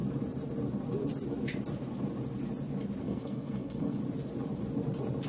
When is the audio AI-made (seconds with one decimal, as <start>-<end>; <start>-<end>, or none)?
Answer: 3.0-4.0